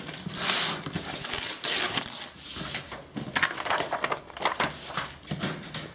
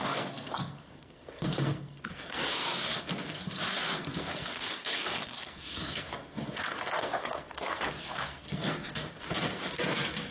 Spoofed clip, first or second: second